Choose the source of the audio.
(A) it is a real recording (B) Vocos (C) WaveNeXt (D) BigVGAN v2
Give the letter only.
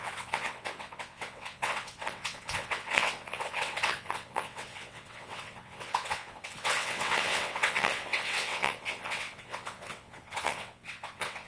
C